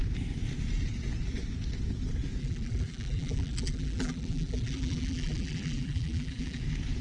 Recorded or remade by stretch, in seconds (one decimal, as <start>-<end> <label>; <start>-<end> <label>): 0.0-2.4 recorded; 2.4-6.6 remade; 6.6-7.0 recorded